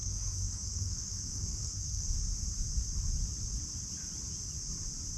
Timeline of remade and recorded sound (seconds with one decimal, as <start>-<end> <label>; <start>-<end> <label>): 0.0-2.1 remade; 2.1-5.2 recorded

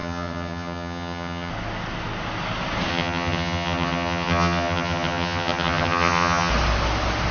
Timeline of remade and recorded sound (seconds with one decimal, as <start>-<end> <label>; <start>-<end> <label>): 0.0-1.5 remade; 1.5-2.9 recorded; 2.9-6.5 remade; 6.5-7.3 recorded

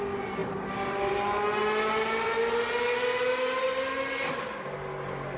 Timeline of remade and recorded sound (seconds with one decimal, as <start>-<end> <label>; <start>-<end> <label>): 0.0-5.4 recorded

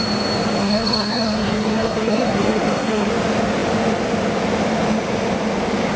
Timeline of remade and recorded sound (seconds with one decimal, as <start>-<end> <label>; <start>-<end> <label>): 0.0-0.6 recorded; 0.6-3.1 remade; 3.1-6.0 recorded